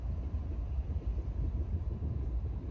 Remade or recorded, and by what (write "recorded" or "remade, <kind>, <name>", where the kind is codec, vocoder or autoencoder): recorded